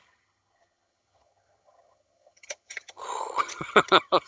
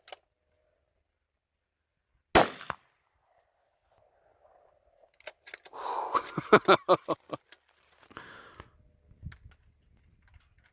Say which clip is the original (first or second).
second